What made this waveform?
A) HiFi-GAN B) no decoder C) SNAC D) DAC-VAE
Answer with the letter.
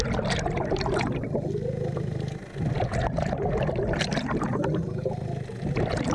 B